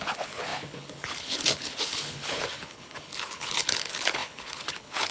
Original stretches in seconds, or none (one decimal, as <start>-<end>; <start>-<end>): none